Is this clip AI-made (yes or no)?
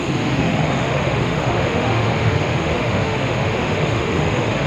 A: yes